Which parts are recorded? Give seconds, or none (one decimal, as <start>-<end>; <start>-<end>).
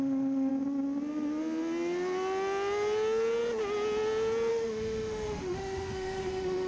0.5-4.5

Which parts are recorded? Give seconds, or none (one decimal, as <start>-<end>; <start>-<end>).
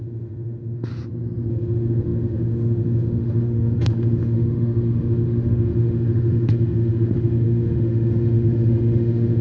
0.9-1.5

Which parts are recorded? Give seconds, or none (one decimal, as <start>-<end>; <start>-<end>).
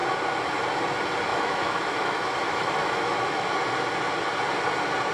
0.0-1.3; 3.5-5.1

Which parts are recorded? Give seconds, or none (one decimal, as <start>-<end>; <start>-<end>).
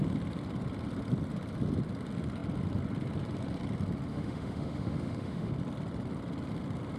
0.0-4.1; 5.5-7.0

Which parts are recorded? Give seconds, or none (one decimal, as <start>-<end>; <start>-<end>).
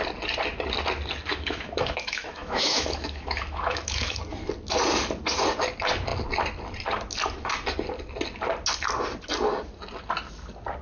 0.0-1.3; 4.2-10.8